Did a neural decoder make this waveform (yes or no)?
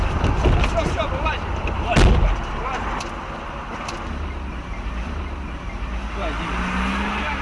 no